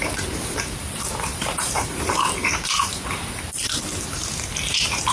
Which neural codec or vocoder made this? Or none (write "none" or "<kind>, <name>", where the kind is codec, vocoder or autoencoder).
vocoder, BigVGAN v2